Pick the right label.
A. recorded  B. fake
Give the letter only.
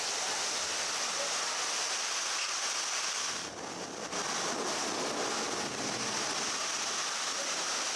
A